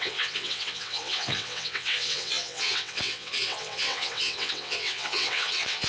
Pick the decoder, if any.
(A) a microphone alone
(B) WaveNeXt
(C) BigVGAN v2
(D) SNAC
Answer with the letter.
B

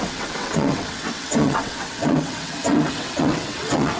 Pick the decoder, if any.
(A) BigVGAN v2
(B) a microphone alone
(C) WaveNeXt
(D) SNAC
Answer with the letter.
C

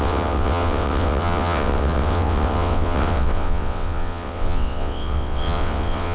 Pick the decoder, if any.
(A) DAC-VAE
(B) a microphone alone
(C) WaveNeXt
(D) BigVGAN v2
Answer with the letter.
C